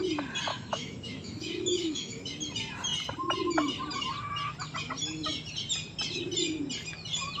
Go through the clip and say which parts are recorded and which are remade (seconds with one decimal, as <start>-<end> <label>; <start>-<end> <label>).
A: 0.0-0.5 recorded; 0.5-2.3 remade; 2.3-7.4 recorded